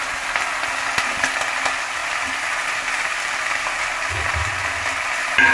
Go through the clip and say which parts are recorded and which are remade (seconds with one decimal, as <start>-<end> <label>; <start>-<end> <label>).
0.0-5.5 recorded